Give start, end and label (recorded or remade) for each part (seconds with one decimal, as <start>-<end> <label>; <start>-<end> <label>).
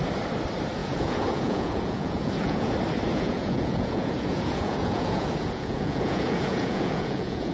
0.0-0.8 recorded; 0.8-2.7 remade; 2.7-3.1 recorded; 3.1-7.5 remade